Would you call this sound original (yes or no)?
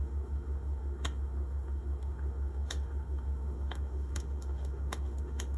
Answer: no